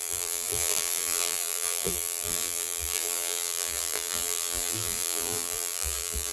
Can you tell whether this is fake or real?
fake